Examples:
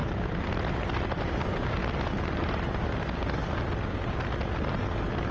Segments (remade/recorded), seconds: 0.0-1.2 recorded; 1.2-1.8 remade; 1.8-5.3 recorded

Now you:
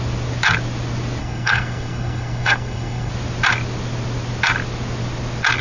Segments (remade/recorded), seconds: 0.0-1.2 recorded; 1.2-3.1 remade; 3.1-5.6 recorded

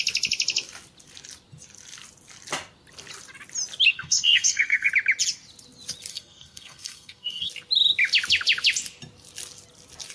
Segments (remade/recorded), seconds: 0.0-3.9 recorded; 3.9-4.9 remade; 4.9-6.1 recorded; 6.1-7.5 remade; 7.5-10.1 recorded